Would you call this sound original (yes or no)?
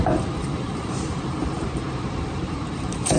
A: no